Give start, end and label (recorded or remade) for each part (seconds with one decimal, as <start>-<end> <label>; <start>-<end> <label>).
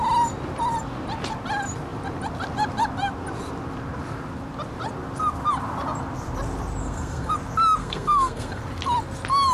0.0-6.8 recorded; 6.8-7.3 remade; 7.3-7.8 recorded; 7.8-8.6 remade; 8.6-9.5 recorded